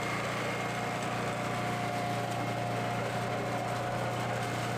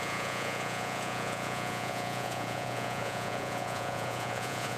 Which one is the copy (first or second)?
second